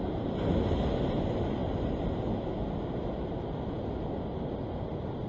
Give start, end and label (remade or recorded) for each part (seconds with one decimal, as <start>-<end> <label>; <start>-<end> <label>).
0.0-5.3 recorded